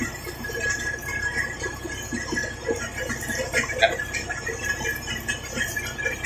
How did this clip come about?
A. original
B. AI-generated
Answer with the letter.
A